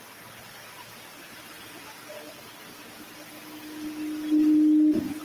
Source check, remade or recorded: recorded